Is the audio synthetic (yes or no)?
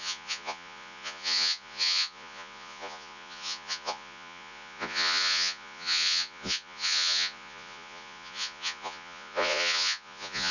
yes